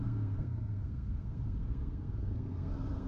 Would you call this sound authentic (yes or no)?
no